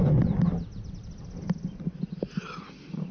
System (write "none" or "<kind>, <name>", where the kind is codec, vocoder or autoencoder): none